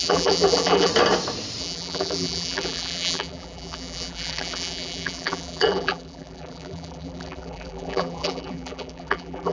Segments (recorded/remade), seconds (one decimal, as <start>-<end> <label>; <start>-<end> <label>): 0.0-0.9 remade; 0.9-1.6 recorded; 1.6-9.5 remade